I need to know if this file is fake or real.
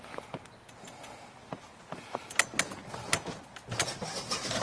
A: real